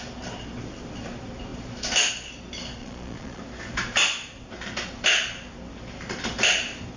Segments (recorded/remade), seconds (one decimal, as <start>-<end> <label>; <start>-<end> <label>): 0.0-2.8 recorded; 2.8-3.4 remade; 3.4-7.0 recorded